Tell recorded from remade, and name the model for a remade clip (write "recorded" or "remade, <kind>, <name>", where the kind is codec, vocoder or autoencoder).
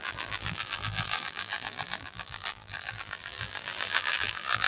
remade, vocoder, BigVGAN v2